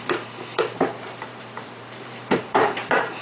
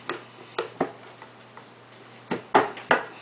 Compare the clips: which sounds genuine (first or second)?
second